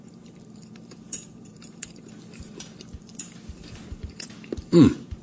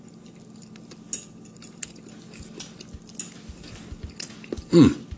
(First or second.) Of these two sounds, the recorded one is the second